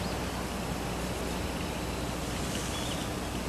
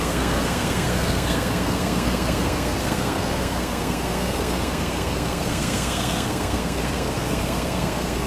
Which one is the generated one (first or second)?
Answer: second